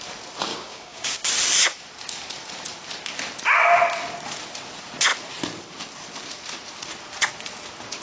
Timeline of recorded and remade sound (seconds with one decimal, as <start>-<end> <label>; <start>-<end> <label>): 0.0-0.5 recorded; 0.5-1.3 remade; 1.3-8.0 recorded